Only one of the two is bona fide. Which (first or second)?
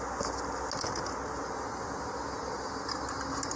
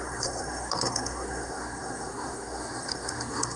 first